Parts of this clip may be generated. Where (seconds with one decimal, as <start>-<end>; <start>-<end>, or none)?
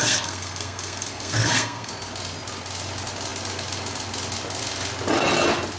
0.0-1.9